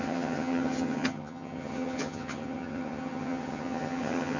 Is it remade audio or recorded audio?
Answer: remade